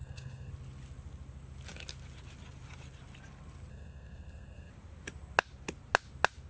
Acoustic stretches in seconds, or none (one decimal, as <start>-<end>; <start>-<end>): 0.5-3.7; 4.7-6.5